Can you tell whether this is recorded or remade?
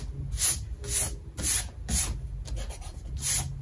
recorded